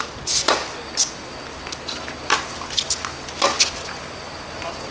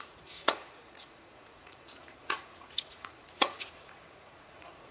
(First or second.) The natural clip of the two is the first